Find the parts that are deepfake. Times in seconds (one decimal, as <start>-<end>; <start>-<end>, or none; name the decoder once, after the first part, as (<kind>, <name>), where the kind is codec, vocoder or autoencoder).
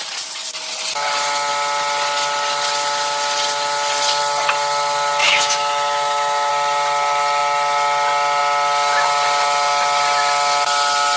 5.2-6.5 (autoencoder, DAC-VAE)